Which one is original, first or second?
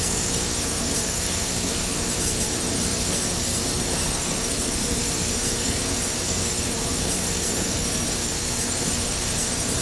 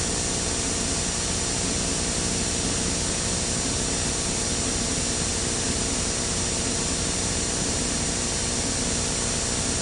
second